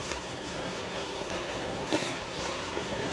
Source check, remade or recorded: remade